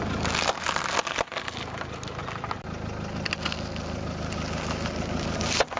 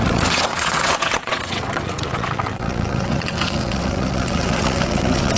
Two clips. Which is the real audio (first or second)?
first